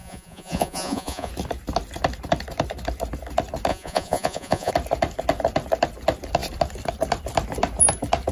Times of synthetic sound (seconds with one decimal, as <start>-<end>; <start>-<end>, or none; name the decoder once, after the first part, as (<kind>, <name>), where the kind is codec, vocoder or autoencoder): 0.0-1.3 (vocoder, Vocos); 3.7-4.7